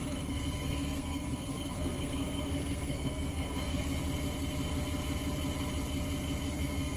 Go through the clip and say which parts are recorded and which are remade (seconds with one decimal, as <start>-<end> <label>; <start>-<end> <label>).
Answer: 0.0-4.0 remade; 4.0-6.5 recorded; 6.5-7.0 remade